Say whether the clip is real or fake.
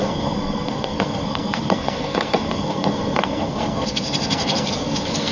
fake